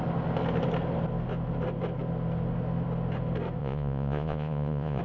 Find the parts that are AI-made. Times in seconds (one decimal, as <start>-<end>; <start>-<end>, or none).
3.6-5.0